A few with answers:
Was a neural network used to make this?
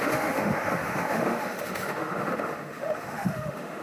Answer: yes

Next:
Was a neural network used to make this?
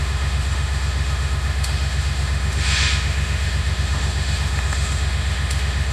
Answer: yes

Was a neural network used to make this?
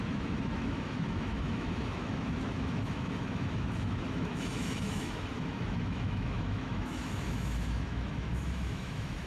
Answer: yes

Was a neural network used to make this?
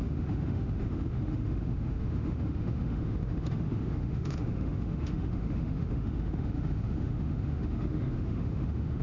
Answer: yes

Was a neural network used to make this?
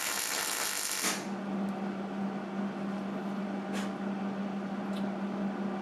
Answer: no